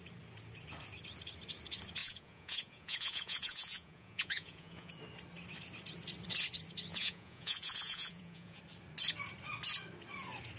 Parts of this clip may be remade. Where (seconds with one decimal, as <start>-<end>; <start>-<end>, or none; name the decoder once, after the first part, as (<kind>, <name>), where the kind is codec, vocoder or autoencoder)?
2.0-4.9 (vocoder, Vocos); 6.9-8.6